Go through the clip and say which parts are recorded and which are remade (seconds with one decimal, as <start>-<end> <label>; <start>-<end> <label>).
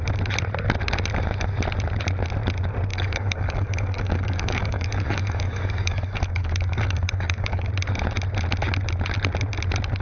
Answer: 0.0-2.9 recorded; 2.9-7.7 remade; 7.7-10.0 recorded